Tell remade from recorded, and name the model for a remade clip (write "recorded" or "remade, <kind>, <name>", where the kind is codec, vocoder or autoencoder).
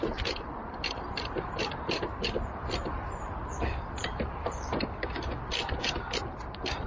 recorded